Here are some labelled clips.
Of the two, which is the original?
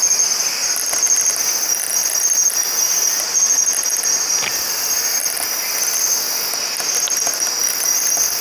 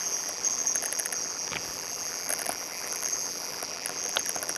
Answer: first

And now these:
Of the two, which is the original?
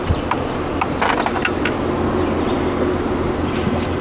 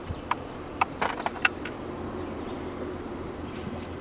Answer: first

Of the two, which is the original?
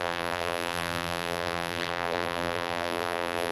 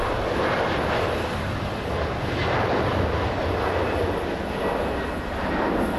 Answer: second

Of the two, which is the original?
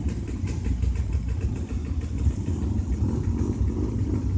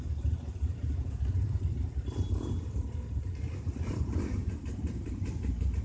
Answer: first